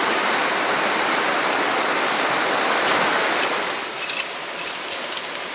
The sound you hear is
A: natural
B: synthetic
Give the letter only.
A